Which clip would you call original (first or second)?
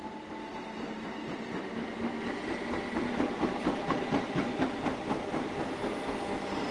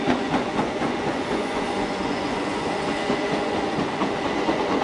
first